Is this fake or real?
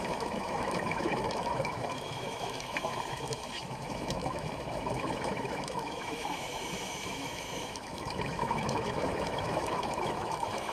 fake